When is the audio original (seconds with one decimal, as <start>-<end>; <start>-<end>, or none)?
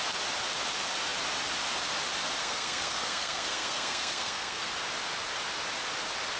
0.0-2.4; 4.7-6.4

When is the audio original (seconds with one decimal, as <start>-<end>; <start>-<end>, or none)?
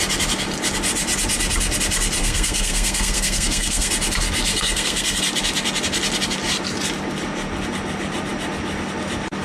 0.0-2.2; 3.9-4.5; 5.2-9.4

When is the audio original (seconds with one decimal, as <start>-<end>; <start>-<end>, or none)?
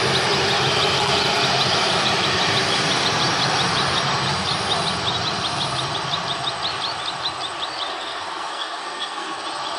0.0-7.9; 9.4-9.8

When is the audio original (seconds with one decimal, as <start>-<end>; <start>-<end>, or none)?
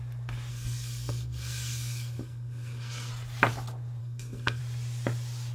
0.0-0.5; 3.1-4.0; 4.6-5.5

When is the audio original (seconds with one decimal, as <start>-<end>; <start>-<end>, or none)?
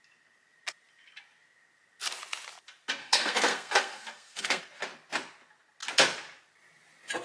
0.0-3.0; 4.6-7.2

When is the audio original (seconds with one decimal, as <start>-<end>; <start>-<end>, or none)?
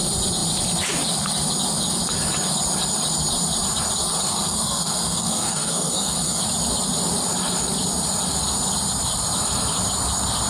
0.0-4.3; 6.4-10.5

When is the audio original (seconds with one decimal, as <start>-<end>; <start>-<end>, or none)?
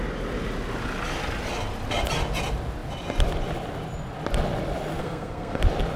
0.0-5.0; 5.6-6.0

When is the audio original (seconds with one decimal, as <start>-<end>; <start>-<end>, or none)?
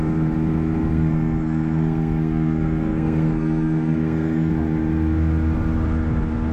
0.0-0.9; 4.5-6.5